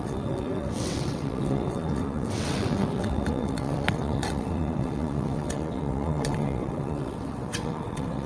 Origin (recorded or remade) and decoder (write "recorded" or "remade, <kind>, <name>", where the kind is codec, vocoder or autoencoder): remade, vocoder, WaveNeXt